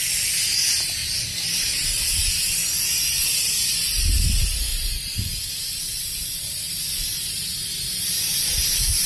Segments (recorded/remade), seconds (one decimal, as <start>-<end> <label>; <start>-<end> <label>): 0.0-2.6 recorded; 2.6-3.3 remade; 3.3-9.1 recorded

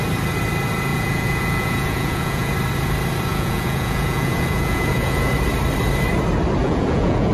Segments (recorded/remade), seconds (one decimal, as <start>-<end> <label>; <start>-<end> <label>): 0.0-0.9 recorded; 0.9-2.5 remade; 2.5-3.3 recorded; 3.3-5.3 remade; 5.3-6.6 recorded; 6.6-7.3 remade